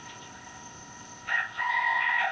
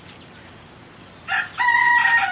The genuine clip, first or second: second